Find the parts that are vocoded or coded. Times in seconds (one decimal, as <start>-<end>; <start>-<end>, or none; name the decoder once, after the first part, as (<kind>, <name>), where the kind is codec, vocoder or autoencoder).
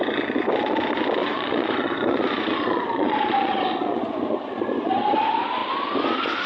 1.2-4.9 (vocoder, Vocos)